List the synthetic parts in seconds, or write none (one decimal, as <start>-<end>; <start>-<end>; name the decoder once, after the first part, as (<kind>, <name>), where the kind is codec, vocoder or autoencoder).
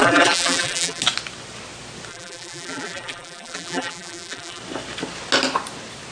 0.0-1.0 (vocoder, BigVGAN v2); 2.1-4.6